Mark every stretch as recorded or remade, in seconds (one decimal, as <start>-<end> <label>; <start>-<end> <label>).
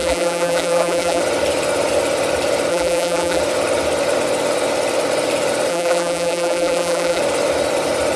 0.0-1.2 remade; 1.2-2.7 recorded; 2.7-3.4 remade; 3.4-5.7 recorded; 5.7-7.2 remade; 7.2-8.2 recorded